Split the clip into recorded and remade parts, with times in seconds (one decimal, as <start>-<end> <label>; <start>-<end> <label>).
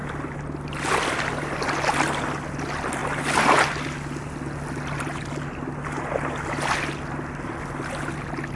0.0-8.6 recorded